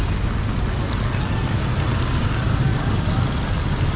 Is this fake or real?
real